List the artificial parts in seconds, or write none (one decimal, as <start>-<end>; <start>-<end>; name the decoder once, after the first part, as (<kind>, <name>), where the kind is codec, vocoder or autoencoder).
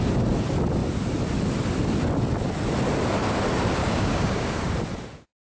3.8-4.7 (codec, DAC)